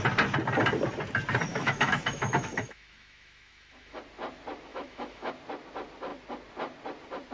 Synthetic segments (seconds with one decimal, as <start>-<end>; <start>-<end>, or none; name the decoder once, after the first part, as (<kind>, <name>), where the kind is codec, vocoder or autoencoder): 1.5-4.0 (autoencoder, DAC-VAE); 4.7-5.3